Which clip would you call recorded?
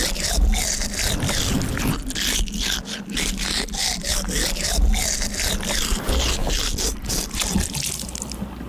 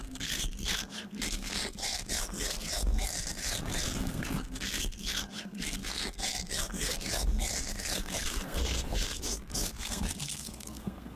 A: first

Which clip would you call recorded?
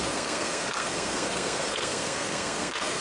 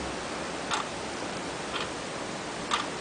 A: second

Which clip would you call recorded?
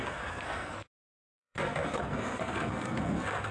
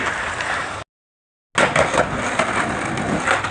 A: second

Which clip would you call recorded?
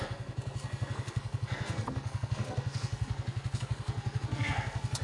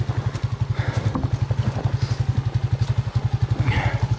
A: second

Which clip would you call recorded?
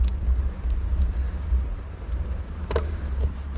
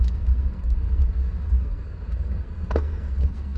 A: first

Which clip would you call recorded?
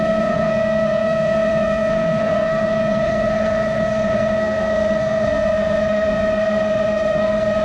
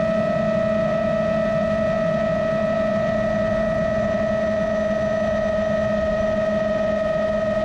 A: second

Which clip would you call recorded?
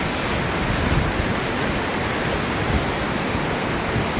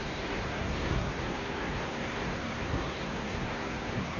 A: first